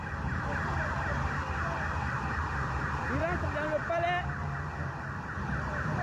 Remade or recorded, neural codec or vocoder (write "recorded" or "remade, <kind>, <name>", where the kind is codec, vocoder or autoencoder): recorded